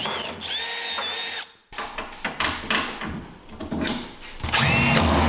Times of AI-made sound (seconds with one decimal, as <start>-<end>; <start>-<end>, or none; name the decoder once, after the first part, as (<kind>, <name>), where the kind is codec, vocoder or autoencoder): none